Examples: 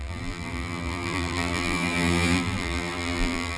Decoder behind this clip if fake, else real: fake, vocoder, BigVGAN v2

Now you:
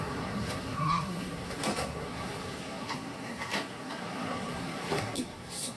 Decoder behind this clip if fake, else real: fake, codec, SNAC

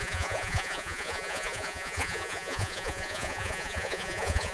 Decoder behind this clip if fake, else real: fake, vocoder, Vocos